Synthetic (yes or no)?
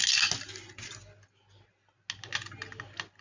no